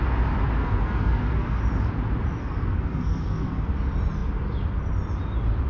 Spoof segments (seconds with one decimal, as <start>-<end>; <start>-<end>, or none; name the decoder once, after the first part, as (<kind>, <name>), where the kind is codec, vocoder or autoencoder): 0.6-1.6 (codec, SNAC); 2.4-3.7